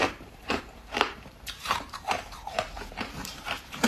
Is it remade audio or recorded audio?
remade